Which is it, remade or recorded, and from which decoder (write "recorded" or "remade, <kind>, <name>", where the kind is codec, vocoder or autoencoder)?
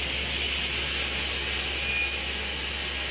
recorded